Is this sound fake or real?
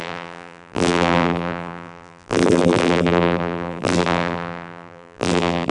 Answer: fake